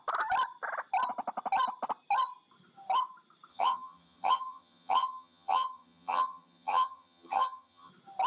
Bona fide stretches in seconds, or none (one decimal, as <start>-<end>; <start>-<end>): 0.0-3.5; 7.9-8.3